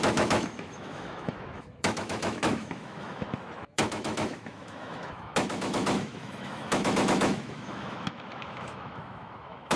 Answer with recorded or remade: remade